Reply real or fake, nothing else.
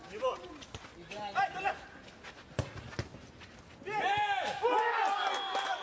real